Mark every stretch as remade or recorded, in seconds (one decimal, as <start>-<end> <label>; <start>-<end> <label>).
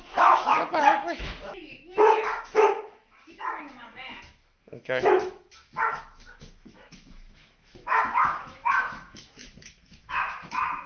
0.0-10.9 remade